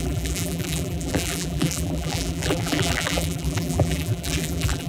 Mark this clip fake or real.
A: fake